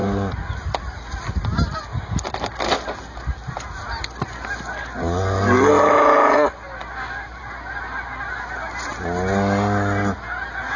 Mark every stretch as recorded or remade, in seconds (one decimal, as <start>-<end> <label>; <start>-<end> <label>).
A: 0.0-10.8 recorded